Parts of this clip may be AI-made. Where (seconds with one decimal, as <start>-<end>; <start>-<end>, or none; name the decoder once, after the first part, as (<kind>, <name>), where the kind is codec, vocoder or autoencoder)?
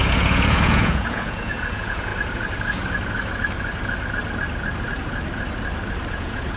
0.0-2.1 (vocoder, Vocos); 6.1-6.6